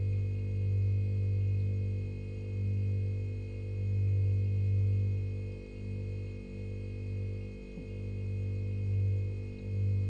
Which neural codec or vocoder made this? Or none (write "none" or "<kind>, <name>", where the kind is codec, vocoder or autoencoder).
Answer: none